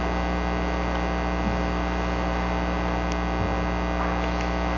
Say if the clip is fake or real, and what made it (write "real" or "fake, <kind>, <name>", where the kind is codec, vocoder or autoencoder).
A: real